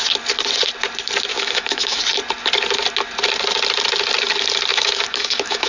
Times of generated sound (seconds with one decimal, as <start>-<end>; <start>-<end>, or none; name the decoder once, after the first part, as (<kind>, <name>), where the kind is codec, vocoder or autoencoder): 1.3-2.0 (autoencoder, DAC-VAE); 4.7-5.7